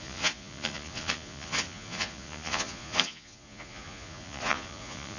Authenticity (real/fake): fake